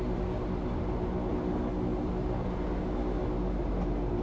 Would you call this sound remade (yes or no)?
no